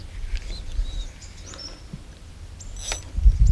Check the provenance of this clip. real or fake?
real